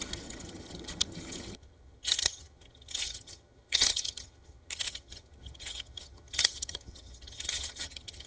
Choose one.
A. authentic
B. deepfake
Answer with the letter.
B